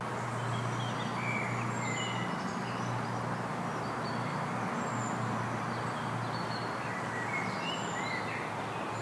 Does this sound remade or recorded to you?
recorded